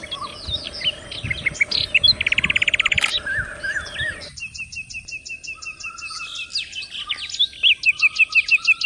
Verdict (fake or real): real